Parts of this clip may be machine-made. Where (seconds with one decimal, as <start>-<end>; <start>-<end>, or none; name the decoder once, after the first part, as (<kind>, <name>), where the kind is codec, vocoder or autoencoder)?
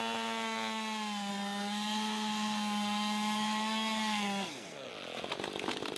1.3-4.9 (codec, SNAC)